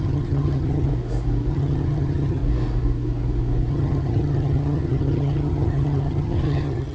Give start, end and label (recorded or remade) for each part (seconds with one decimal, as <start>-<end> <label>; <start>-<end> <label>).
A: 0.0-0.9 remade; 0.9-1.5 recorded; 1.5-2.4 remade; 2.4-3.7 recorded; 3.7-6.9 remade